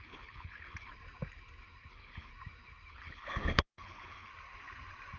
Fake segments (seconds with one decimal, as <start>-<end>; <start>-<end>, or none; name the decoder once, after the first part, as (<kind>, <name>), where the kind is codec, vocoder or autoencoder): 0.0-0.9 (codec, HILCodec); 1.9-2.3; 2.9-4.3